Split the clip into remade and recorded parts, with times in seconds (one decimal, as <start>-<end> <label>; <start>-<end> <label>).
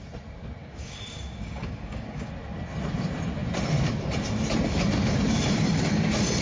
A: 0.0-0.6 recorded; 0.6-2.3 remade; 2.3-6.4 recorded